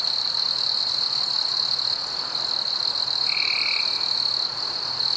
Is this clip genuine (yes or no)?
yes